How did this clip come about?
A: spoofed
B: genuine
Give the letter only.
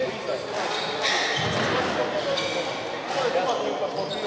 B